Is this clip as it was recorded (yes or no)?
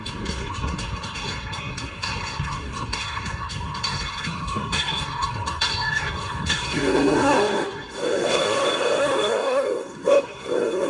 no